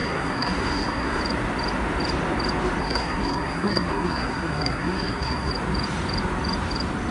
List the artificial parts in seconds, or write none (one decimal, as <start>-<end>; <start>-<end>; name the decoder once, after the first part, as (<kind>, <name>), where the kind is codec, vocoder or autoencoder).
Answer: 0.0-1.2 (codec, SNAC); 2.8-5.5